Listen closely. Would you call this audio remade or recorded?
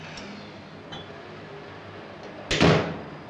recorded